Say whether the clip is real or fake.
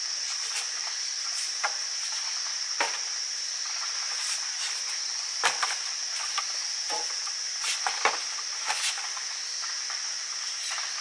real